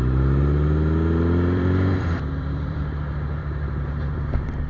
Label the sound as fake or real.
fake